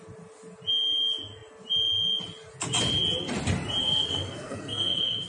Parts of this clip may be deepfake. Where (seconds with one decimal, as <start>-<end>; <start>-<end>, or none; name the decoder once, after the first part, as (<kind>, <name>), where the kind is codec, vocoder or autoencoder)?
3.8-5.3 (codec, SNAC)